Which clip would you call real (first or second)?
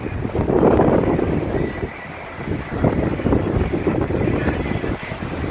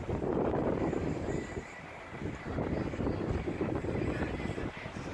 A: second